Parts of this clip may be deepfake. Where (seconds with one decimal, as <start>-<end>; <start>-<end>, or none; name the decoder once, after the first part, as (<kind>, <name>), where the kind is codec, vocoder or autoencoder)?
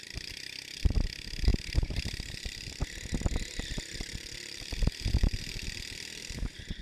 none